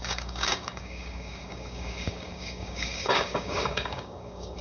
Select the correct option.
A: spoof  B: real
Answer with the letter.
A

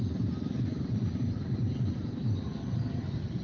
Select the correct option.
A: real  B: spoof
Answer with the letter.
A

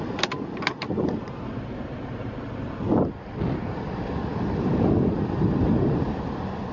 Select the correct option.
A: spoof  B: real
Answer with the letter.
B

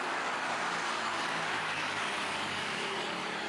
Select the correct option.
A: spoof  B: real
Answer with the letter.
A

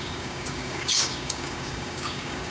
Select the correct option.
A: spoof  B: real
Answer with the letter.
A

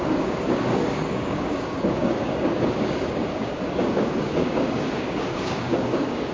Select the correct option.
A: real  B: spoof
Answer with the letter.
B